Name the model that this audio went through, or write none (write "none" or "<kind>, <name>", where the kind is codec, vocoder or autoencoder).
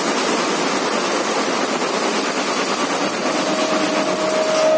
none